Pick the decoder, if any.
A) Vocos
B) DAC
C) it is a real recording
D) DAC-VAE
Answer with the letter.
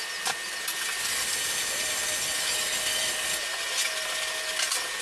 C